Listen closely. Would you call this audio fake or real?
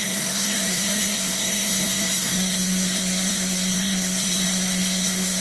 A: fake